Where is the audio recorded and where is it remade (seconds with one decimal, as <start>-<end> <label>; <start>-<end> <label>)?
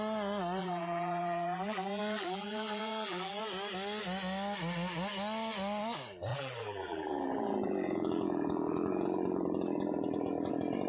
0.0-0.6 recorded; 0.6-3.4 remade; 3.4-6.3 recorded; 6.3-10.5 remade; 10.5-10.9 recorded